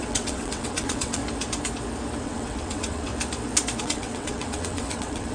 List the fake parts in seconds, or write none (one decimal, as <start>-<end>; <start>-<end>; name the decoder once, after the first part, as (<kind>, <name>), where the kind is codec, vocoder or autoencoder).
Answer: 0.0-1.2 (vocoder, WaveNeXt); 2.2-3.1; 3.8-5.3